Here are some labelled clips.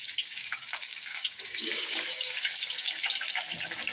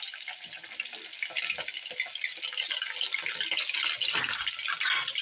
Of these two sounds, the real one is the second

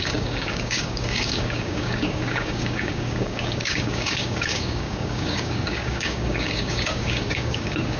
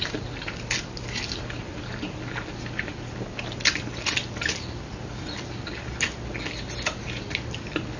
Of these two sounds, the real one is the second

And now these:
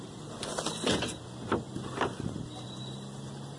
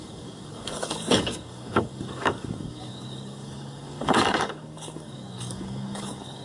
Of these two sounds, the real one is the first